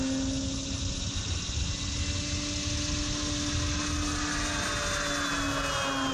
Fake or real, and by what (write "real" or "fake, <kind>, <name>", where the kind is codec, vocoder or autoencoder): real